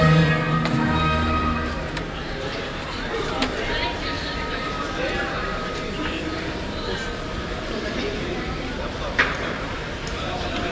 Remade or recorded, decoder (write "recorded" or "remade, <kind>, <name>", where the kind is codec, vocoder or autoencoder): remade, vocoder, BigVGAN v2